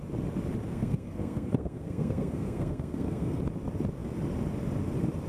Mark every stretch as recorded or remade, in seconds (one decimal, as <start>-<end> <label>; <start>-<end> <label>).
0.0-0.7 recorded; 0.7-3.4 remade; 3.4-5.3 recorded